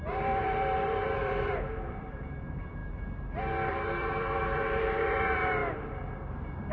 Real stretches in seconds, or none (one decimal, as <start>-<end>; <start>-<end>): 2.8-3.7; 5.6-6.3